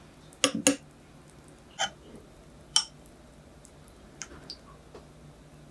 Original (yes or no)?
yes